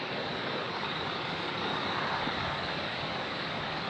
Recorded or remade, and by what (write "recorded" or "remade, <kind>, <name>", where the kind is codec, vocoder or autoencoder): remade, codec, DAC